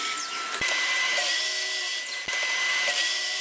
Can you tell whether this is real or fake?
fake